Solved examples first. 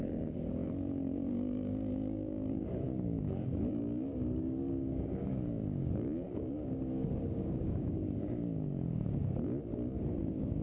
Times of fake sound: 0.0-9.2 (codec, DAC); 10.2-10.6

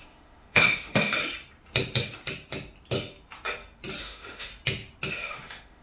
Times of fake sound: 0.0-1.2 (autoencoder, DAC-VAE); 4.0-4.5; 5.1-5.8

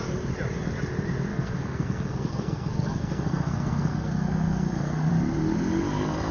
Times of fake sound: 1.3-5.1 (codec, SNAC)

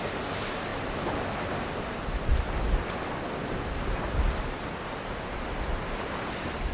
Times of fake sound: none

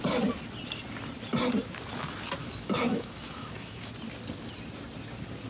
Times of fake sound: 2.4-3.9 (autoencoder, DAC-VAE)